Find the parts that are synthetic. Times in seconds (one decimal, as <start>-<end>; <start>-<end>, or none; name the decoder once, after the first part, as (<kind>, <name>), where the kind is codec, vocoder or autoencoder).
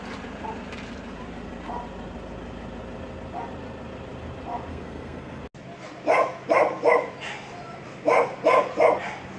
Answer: 4.7-5.4 (codec, SNAC)